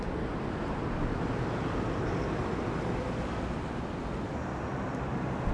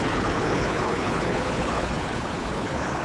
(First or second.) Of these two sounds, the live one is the first